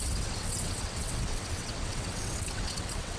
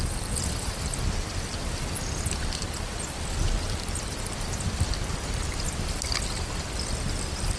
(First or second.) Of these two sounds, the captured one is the second